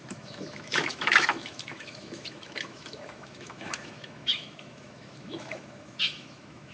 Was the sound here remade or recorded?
remade